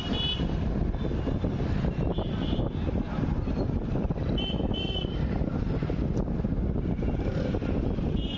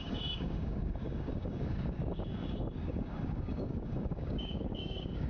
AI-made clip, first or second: second